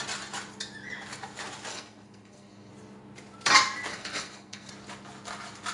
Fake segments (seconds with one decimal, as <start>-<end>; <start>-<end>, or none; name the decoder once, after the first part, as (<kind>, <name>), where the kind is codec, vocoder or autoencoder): 1.7-2.7 (codec, SNAC); 3.9-4.7